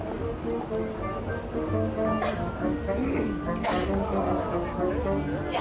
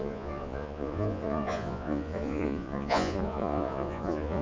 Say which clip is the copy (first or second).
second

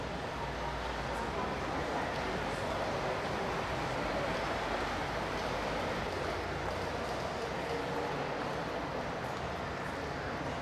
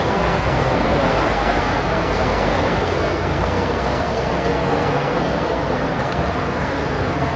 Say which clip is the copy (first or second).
second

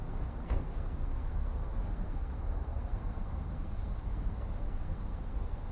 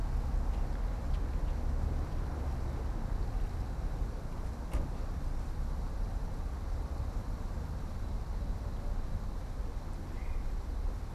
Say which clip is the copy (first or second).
first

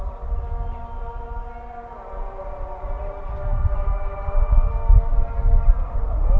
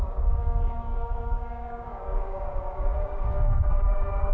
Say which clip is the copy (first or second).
second